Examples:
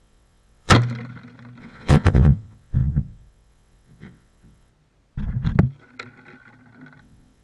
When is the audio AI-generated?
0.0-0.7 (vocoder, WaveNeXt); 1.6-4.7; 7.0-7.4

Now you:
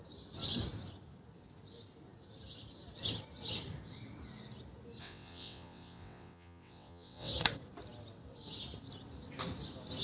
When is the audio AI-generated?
5.0-7.3 (vocoder, WaveNeXt)

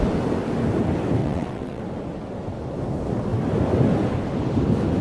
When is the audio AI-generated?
1.2-1.8 (vocoder, WaveNeXt)

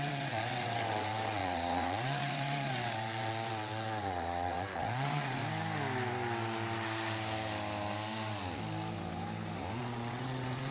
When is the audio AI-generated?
0.0-5.4 (vocoder, WaveNeXt); 9.8-10.7

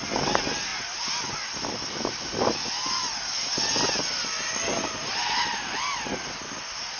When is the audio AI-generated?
none

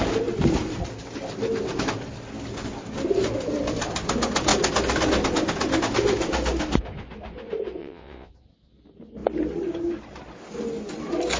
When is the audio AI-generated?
7.8-8.3 (vocoder, WaveNeXt)

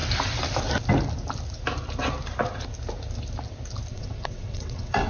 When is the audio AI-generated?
3.9-5.1 (vocoder, WaveNeXt)

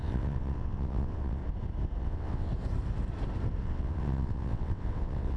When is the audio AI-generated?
0.0-1.4 (vocoder, WaveNeXt); 2.0-2.5; 3.6-5.4